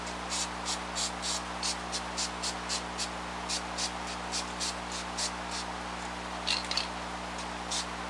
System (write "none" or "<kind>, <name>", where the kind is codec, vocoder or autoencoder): none